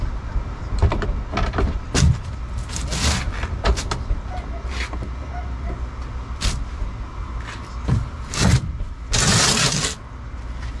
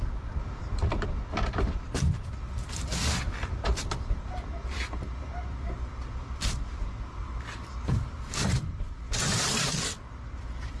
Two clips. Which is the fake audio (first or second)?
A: second